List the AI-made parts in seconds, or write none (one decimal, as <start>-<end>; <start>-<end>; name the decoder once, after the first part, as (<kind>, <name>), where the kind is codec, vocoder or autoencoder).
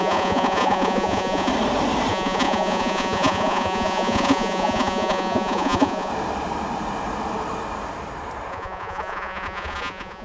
0.0-1.5 (vocoder, Vocos); 2.1-6.1; 8.5-10.2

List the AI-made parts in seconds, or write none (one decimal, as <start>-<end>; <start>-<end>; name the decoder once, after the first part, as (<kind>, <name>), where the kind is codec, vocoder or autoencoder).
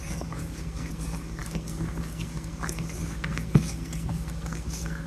0.0-5.1 (codec, SNAC)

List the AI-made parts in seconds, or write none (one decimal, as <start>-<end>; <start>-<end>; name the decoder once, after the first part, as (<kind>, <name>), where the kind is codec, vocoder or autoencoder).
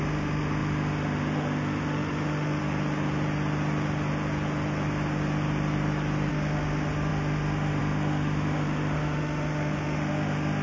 0.0-2.6 (autoencoder, DAC-VAE); 6.3-10.6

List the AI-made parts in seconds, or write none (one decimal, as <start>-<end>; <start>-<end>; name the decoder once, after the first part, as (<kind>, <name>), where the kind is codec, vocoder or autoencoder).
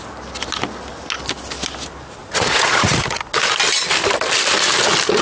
2.2-3.2 (vocoder, Vocos)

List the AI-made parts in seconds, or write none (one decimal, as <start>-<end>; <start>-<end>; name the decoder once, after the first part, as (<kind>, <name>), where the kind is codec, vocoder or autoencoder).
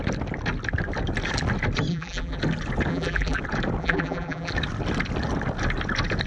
1.9-2.4 (vocoder, BigVGAN v2); 2.9-3.4; 3.8-4.5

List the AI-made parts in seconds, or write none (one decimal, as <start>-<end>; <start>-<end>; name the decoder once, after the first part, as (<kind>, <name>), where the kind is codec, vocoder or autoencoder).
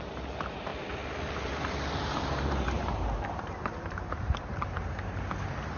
0.0-0.7 (vocoder, BigVGAN v2); 1.3-5.8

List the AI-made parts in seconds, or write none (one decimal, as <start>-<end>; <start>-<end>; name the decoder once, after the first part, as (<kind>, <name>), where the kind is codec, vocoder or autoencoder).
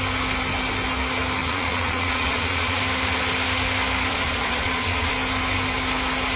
1.4-2.8 (vocoder, Vocos); 4.1-5.1